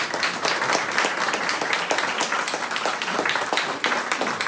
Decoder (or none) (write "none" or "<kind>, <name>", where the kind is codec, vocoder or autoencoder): none